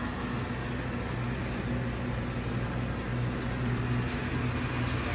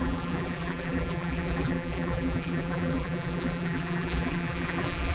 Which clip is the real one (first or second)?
first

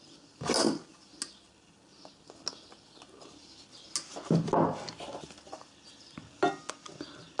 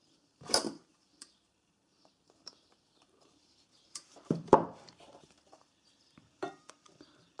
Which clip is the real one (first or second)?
first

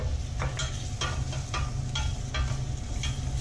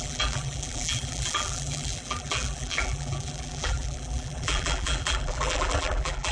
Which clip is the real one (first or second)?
first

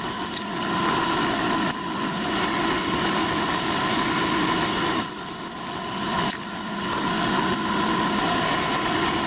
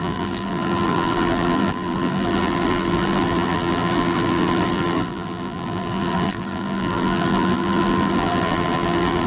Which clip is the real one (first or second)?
first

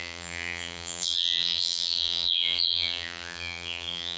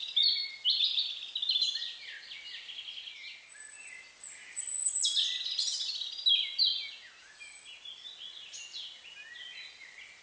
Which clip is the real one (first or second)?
second